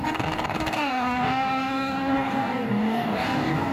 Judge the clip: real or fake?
fake